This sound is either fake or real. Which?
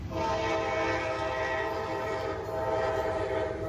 real